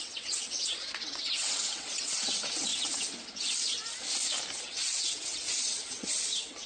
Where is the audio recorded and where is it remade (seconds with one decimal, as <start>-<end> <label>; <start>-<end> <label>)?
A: 0.0-2.7 remade; 2.7-4.6 recorded; 4.6-6.7 remade